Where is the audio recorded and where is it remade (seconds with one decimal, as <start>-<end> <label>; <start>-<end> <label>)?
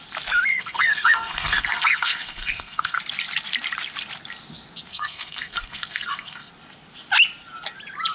0.0-0.5 recorded; 0.5-3.0 remade; 3.0-4.9 recorded; 4.9-6.5 remade; 6.5-8.1 recorded